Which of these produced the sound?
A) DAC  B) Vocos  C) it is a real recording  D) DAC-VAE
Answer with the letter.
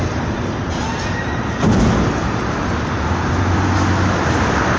C